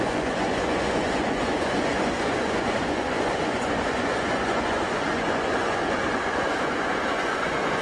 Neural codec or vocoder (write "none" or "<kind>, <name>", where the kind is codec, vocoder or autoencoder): vocoder, Vocos